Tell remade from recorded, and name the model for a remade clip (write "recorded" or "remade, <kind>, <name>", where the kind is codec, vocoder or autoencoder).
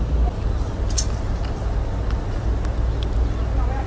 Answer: recorded